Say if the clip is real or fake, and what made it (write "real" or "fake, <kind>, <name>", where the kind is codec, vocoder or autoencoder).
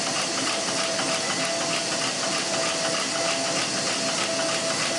real